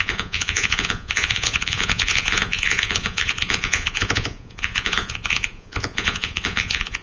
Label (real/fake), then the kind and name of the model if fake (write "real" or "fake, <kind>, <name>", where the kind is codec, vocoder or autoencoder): fake, vocoder, Vocos